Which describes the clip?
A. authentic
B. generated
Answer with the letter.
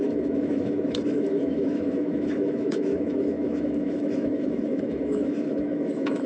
B